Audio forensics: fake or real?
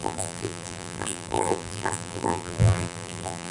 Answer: fake